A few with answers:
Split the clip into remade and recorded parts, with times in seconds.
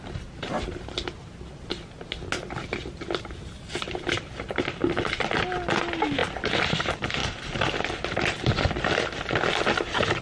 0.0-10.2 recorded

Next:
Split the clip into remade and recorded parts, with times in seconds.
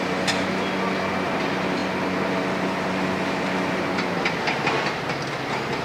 0.0-5.8 recorded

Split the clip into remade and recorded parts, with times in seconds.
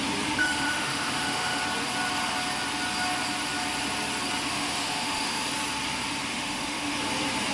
0.0-0.4 recorded; 0.4-1.6 remade; 1.6-4.5 recorded; 4.5-5.5 remade; 5.5-6.3 recorded; 6.3-7.0 remade; 7.0-7.5 recorded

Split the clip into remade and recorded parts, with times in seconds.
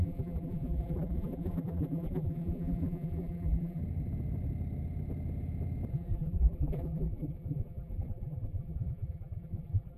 0.0-3.8 remade; 3.8-5.9 recorded; 5.9-10.0 remade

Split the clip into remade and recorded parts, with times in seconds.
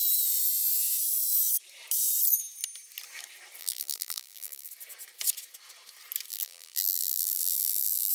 0.0-3.6 recorded; 3.6-4.7 remade; 4.7-6.3 recorded; 6.3-8.1 remade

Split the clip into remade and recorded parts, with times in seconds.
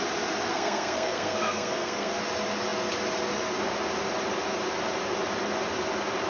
0.0-0.5 recorded; 0.5-2.2 remade; 2.2-6.3 recorded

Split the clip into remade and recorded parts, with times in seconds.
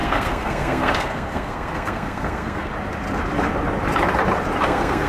0.0-2.7 remade; 2.7-4.6 recorded; 4.6-5.1 remade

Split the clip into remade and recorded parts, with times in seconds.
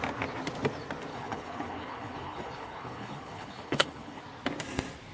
0.0-1.1 recorded; 1.1-4.2 remade; 4.2-5.1 recorded